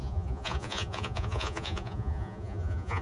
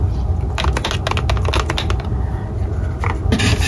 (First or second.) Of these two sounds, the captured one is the second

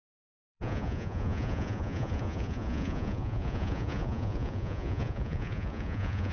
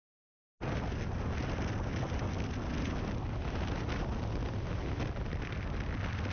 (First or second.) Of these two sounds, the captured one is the second